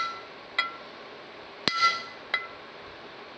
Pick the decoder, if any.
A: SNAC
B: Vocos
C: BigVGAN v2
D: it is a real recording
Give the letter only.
D